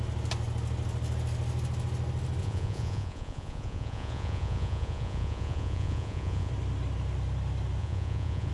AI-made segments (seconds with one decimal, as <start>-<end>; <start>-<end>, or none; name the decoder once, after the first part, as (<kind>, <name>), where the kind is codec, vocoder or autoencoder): 2.4-6.5 (vocoder, Vocos); 7.8-8.5